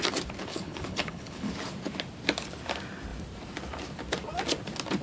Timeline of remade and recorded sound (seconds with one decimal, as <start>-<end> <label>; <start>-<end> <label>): 0.0-0.5 recorded; 0.5-1.5 remade; 1.5-5.0 recorded